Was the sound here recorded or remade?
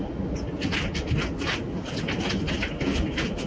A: recorded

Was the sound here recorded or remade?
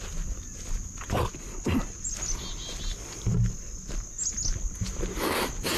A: recorded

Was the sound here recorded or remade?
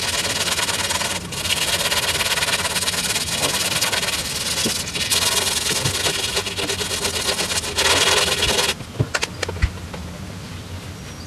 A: recorded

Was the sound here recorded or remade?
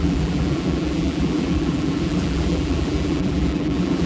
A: remade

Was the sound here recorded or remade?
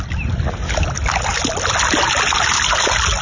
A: recorded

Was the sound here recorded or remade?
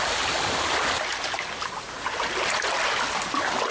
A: recorded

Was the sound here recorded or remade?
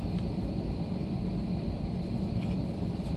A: recorded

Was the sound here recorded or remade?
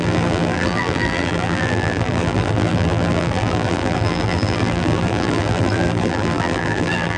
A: remade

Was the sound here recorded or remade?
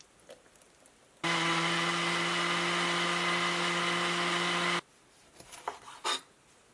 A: recorded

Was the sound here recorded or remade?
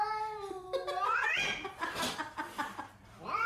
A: remade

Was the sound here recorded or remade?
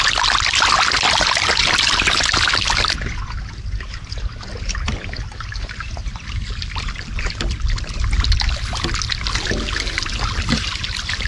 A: recorded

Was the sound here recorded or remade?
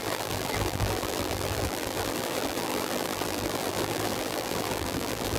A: remade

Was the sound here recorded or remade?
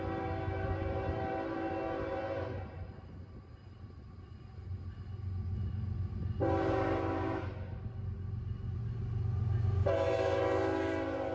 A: recorded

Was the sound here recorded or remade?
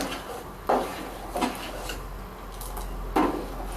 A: recorded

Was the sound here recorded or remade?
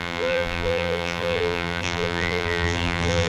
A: remade